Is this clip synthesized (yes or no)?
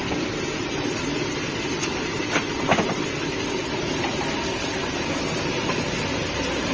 no